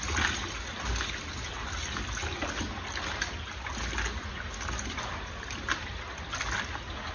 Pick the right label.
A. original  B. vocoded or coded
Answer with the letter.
A